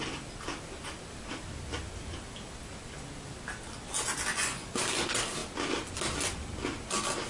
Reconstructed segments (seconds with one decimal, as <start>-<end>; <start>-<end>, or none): 4.3-4.8